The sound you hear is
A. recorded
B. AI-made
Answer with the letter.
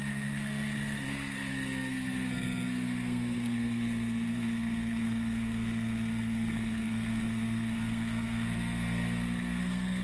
B